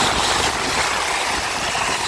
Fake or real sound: real